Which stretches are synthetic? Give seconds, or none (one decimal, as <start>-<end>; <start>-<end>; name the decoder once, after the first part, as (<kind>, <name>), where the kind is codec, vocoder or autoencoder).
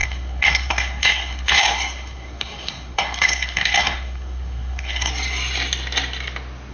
0.0-5.1 (codec, SNAC)